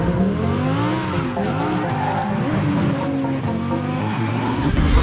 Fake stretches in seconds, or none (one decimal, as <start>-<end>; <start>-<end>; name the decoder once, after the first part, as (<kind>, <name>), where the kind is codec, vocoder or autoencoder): 4.0-5.0 (codec, SNAC)